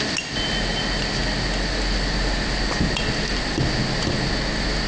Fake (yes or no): no